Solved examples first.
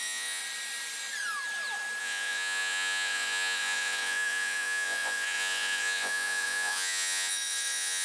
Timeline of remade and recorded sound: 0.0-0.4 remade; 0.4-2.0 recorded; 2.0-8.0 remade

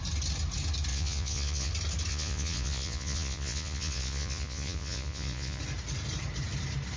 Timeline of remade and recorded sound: 0.0-0.9 recorded; 0.9-1.7 remade; 1.7-2.1 recorded; 2.1-5.6 remade; 5.6-7.0 recorded

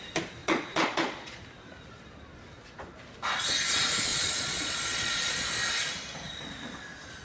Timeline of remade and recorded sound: 0.0-0.4 recorded; 0.4-1.4 remade; 1.4-4.1 recorded; 4.1-5.4 remade; 5.4-7.2 recorded

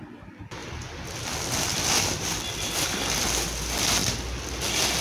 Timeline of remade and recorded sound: 0.0-5.0 recorded

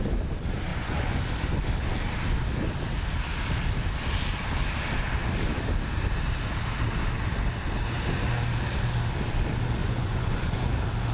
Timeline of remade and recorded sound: 0.0-0.7 recorded; 0.7-1.2 remade; 1.2-9.8 recorded; 9.8-10.7 remade; 10.7-11.1 recorded

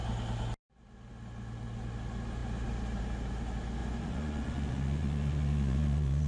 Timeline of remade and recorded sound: 0.0-3.8 recorded; 3.8-6.3 remade

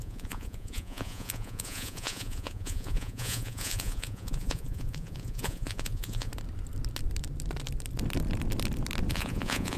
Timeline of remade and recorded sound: 0.0-6.3 remade; 6.3-9.1 recorded; 9.1-9.8 remade